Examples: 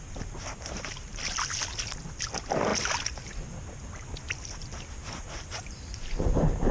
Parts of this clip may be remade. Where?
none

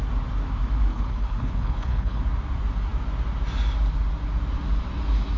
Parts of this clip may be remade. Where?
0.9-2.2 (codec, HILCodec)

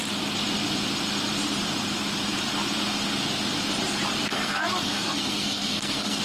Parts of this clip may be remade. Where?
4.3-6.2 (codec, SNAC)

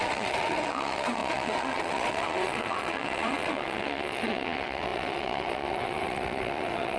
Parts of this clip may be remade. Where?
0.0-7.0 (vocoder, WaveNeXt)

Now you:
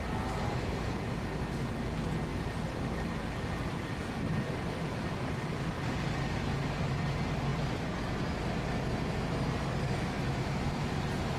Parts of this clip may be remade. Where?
none

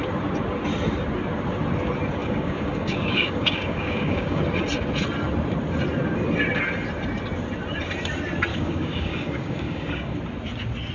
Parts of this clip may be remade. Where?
2.2-4.4 (codec, DAC); 8.5-10.2

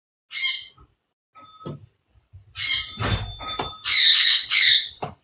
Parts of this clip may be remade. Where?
4.0-5.2 (codec, HILCodec)